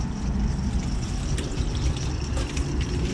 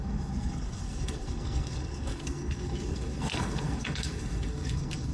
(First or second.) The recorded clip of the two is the first